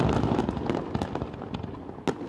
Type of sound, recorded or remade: recorded